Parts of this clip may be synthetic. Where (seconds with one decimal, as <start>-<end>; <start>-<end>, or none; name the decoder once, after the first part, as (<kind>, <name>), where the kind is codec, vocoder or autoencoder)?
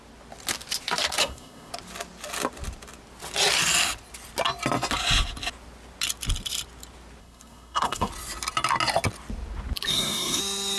1.2-1.7 (codec, SNAC); 7.2-8.1; 9.9-10.4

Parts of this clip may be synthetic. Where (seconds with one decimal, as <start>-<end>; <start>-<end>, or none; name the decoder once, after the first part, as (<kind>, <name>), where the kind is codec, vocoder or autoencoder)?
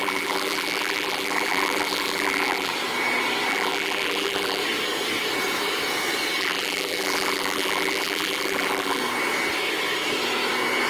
0.0-2.7 (vocoder, BigVGAN v2); 3.5-4.6; 6.4-9.0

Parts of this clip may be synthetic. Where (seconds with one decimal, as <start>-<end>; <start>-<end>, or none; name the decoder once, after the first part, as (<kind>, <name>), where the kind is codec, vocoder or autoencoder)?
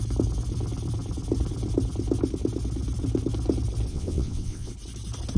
3.9-4.7 (vocoder, WaveNeXt)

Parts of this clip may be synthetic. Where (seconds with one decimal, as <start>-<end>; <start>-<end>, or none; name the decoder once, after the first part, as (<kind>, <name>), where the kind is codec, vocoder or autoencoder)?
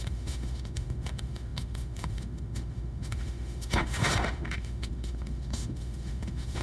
0.0-6.6 (autoencoder, DAC-VAE)